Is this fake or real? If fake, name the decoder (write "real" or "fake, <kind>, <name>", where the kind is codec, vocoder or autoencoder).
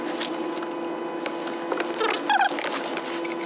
real